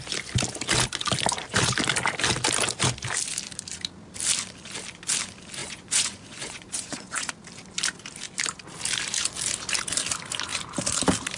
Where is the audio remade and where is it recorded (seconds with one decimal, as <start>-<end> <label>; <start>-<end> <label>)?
0.0-5.6 recorded; 5.6-7.3 remade; 7.3-11.4 recorded